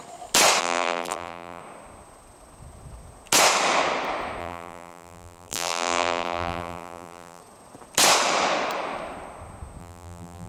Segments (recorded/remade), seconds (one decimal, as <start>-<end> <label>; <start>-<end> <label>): 0.0-0.6 recorded; 0.6-1.6 remade; 1.6-4.4 recorded; 4.4-7.4 remade; 7.4-9.8 recorded; 9.8-10.5 remade